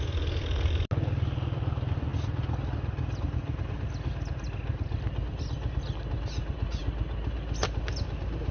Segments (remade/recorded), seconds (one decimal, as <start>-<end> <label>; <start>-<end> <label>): 0.0-8.5 recorded